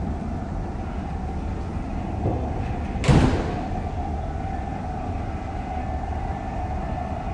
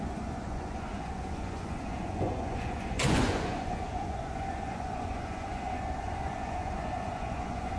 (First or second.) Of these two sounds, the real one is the first